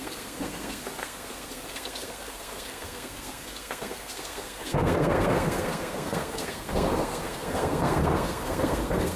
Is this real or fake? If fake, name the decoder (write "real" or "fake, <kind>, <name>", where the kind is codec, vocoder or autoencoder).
fake, codec, SNAC